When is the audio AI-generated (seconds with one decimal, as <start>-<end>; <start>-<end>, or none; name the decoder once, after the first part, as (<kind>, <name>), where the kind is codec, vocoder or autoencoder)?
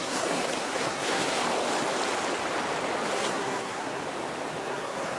0.0-1.4 (codec, SNAC); 3.1-4.0; 4.6-5.2